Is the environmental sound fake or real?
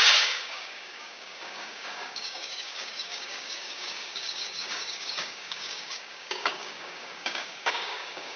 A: fake